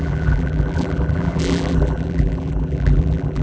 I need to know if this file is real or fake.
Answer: fake